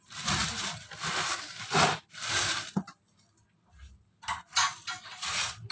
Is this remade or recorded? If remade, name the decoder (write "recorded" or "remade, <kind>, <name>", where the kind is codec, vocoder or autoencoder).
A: recorded